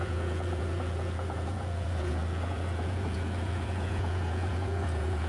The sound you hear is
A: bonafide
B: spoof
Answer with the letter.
B